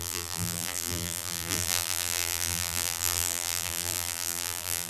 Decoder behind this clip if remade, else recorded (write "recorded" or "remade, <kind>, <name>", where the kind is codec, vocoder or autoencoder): remade, vocoder, BigVGAN v2